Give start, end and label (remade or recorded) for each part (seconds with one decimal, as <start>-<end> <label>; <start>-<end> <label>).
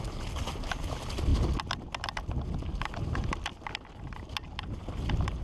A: 0.0-5.4 recorded